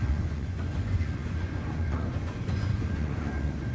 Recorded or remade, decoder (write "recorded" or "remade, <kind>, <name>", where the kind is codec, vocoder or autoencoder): remade, vocoder, Vocos